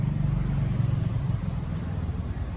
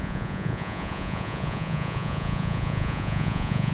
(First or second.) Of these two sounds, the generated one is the second